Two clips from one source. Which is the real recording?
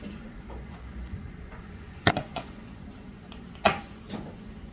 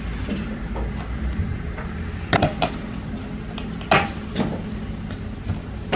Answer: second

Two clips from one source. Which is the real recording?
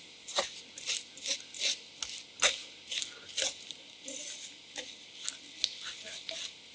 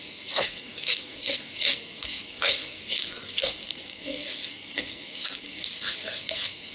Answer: first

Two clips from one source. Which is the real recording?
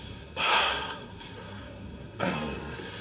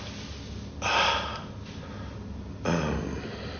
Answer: second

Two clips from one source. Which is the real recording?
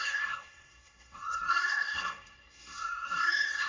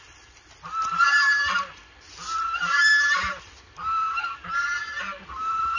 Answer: second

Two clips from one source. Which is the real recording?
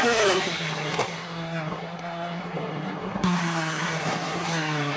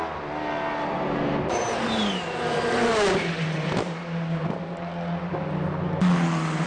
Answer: second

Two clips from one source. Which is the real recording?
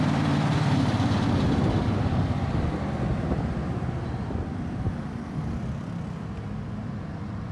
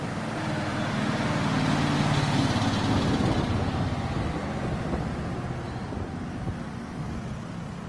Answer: second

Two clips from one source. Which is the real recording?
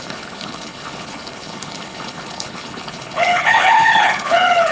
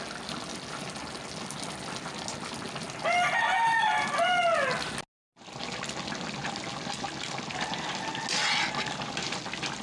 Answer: second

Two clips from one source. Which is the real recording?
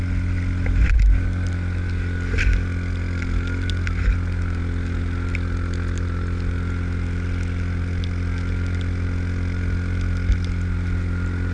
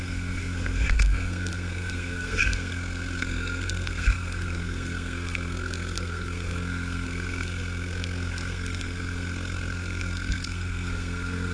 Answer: first